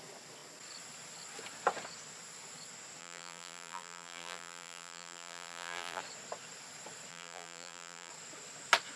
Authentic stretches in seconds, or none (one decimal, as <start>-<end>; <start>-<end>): 0.0-3.0; 6.0-7.1; 8.1-9.0